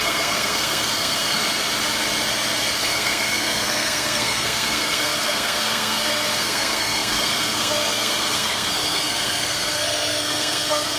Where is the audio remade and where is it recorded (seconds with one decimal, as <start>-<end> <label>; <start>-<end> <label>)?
0.0-1.4 remade; 1.4-2.8 recorded; 2.8-11.0 remade

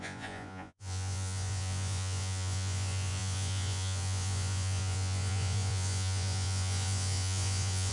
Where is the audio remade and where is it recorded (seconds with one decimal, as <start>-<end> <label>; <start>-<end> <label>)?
0.0-7.9 remade

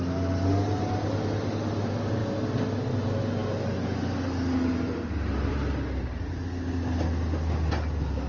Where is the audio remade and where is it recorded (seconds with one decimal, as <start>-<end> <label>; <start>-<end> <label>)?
0.0-8.3 recorded

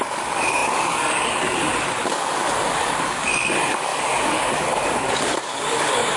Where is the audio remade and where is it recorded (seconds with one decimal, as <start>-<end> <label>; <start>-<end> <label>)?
0.0-6.2 remade

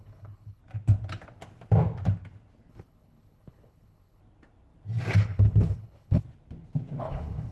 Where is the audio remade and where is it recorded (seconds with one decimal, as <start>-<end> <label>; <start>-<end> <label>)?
0.0-0.6 remade; 0.6-2.7 recorded; 2.7-4.2 remade; 4.2-5.2 recorded; 5.2-6.2 remade; 6.2-7.0 recorded; 7.0-7.5 remade